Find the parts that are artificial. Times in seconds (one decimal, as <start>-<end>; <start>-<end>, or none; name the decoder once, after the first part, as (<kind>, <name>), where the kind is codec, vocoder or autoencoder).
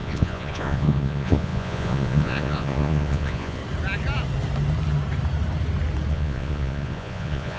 0.0-3.6 (vocoder, Vocos); 6.1-7.6